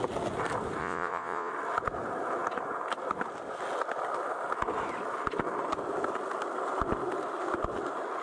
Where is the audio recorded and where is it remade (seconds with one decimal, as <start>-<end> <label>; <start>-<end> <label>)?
0.0-0.8 recorded; 0.8-1.5 remade; 1.5-8.2 recorded